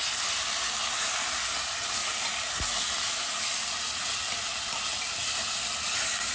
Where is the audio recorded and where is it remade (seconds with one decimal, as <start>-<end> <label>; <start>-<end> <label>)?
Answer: 0.0-6.3 recorded